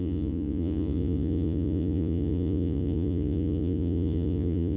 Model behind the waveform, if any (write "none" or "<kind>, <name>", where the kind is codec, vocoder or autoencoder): vocoder, Vocos